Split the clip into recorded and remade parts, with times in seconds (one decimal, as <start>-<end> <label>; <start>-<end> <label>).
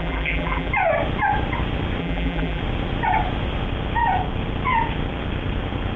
0.0-0.7 remade; 0.7-2.0 recorded; 2.0-2.6 remade; 2.6-6.0 recorded